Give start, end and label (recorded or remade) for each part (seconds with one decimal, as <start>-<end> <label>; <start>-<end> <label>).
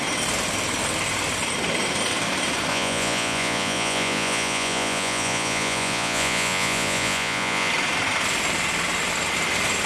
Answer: 0.0-2.7 recorded; 2.7-7.7 remade; 7.7-9.9 recorded